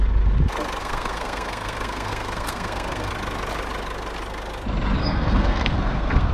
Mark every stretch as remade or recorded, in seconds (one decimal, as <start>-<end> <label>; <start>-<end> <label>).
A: 0.0-0.8 recorded; 0.8-3.1 remade; 3.1-5.0 recorded; 5.0-6.3 remade